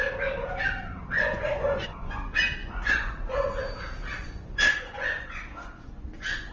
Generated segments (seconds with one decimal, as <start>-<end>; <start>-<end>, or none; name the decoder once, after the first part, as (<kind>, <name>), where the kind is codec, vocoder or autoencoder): 1.0-2.2 (vocoder, Vocos); 2.6-3.6; 4.1-6.5